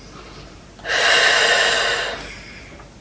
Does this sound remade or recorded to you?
recorded